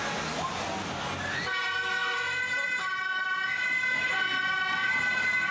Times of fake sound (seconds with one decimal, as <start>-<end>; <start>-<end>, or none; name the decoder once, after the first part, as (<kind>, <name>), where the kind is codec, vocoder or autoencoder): none